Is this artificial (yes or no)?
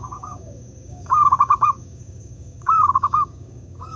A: yes